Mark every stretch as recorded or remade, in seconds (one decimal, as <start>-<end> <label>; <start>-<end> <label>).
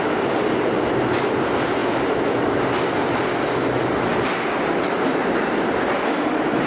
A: 0.0-6.7 recorded